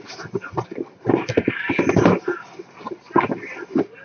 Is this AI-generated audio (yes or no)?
no